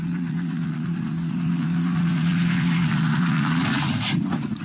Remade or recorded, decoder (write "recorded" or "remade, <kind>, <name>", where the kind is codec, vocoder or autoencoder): remade, vocoder, Vocos